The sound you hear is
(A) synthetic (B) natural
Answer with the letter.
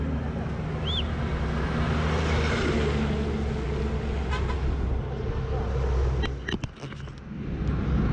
B